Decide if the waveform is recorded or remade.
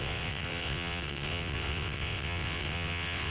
remade